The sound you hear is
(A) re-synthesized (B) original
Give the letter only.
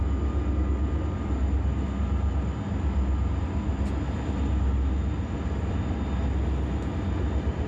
B